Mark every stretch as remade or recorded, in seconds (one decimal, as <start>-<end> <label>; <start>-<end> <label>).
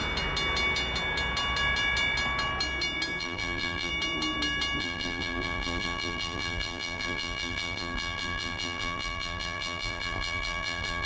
0.0-3.2 recorded; 3.2-3.9 remade; 3.9-4.8 recorded; 4.8-11.1 remade